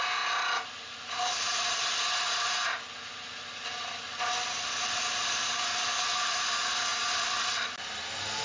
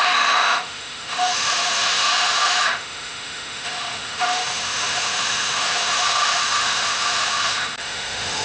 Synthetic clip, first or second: second